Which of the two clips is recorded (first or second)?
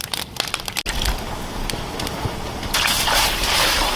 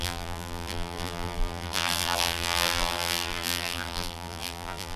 first